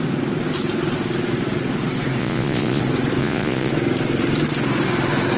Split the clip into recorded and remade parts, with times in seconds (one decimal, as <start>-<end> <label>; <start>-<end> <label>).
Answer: 0.0-2.2 recorded; 2.2-2.8 remade; 2.8-3.2 recorded; 3.2-3.7 remade; 3.7-5.4 recorded